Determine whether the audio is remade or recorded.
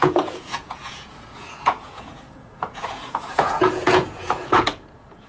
remade